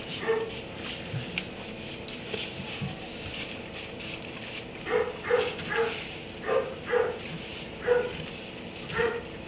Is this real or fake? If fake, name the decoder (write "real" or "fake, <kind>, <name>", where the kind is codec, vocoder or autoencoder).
real